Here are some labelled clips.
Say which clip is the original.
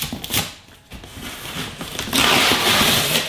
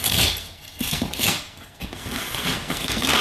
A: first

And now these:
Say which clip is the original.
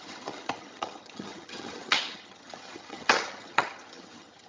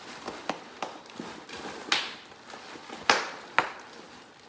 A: second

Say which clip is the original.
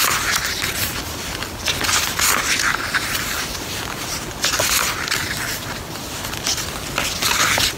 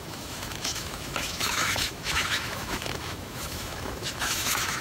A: first